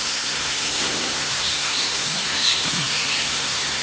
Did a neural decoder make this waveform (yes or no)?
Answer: yes